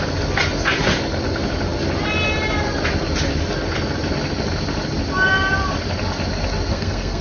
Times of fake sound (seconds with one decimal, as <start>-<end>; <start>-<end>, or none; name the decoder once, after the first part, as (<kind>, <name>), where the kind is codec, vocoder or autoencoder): 6.7-7.2 (codec, SNAC)